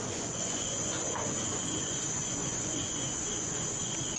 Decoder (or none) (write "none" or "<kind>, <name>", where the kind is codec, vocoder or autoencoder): vocoder, Vocos